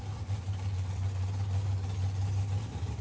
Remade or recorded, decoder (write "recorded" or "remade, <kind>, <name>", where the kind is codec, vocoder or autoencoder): recorded